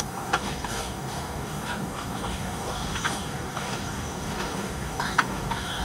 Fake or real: fake